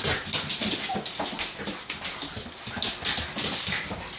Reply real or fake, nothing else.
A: real